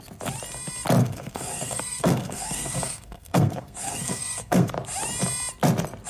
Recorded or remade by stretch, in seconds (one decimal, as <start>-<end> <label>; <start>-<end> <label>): 0.0-1.0 recorded; 1.0-4.7 remade; 4.7-6.1 recorded